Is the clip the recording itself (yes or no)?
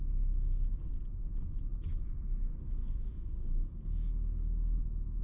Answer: yes